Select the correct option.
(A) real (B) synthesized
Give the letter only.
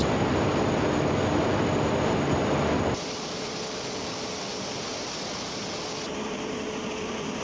A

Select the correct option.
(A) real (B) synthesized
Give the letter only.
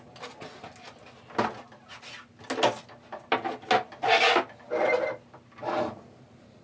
A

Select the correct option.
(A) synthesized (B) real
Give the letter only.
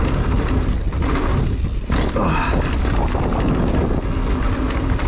B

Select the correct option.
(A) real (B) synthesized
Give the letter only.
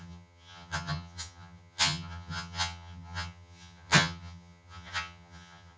B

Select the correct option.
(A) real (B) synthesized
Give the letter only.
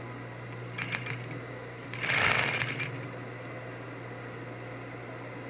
A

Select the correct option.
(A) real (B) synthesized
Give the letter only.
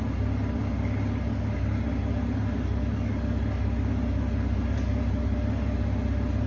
A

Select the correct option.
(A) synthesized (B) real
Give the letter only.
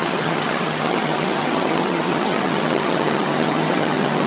A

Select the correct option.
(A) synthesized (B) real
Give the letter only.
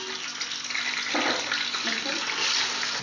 B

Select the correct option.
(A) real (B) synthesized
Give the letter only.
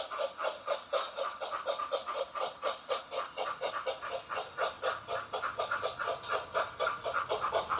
A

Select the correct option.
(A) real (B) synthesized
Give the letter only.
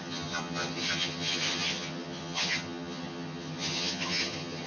B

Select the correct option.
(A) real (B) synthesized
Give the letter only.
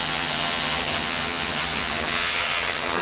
B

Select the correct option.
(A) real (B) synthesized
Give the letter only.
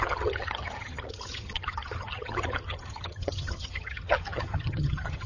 B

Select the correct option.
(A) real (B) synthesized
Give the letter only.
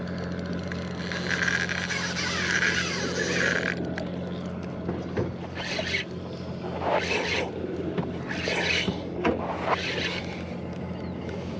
A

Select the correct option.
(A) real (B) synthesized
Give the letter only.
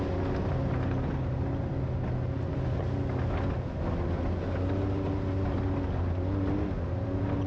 A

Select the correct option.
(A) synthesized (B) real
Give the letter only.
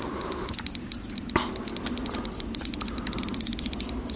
B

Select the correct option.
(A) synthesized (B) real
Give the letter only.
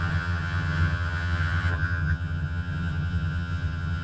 A